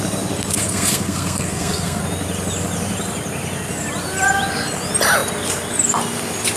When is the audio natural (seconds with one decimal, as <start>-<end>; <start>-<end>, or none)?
0.0-0.6; 2.0-6.6